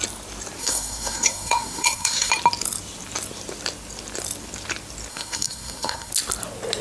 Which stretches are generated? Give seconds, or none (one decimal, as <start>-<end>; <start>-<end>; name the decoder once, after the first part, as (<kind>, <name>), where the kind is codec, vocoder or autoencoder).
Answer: 0.6-2.3 (codec, SNAC); 5.1-6.1